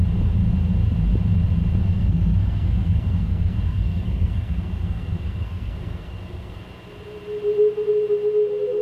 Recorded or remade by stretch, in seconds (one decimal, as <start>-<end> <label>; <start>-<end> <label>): 0.0-1.8 recorded; 1.8-6.6 remade; 6.6-8.8 recorded